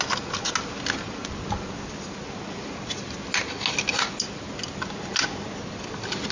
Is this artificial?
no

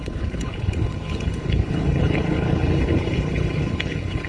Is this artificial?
yes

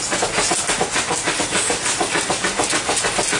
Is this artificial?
no